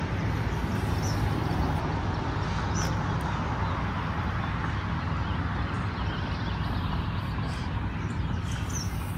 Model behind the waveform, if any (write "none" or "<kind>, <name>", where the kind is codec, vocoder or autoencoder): none